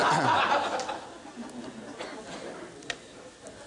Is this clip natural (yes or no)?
yes